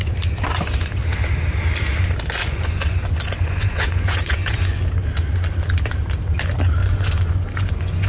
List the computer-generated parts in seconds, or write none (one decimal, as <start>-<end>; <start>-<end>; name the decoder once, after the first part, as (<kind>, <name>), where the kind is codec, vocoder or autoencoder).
2.4-4.8 (vocoder, Vocos); 6.8-8.1